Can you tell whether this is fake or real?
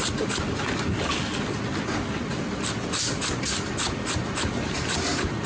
real